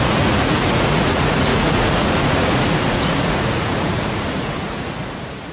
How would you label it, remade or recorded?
remade